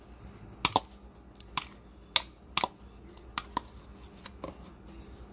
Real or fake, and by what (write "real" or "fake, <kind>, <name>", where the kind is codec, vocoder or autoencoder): real